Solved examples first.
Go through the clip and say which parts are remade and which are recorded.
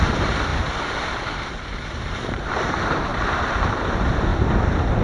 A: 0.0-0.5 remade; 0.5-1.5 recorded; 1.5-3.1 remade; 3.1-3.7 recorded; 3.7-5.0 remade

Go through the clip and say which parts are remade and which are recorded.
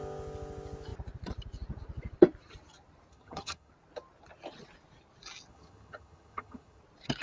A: 0.0-3.1 recorded; 3.1-3.7 remade; 3.7-5.5 recorded; 5.5-6.8 remade; 6.8-7.2 recorded